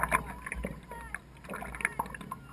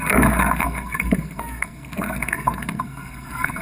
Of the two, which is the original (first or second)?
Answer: first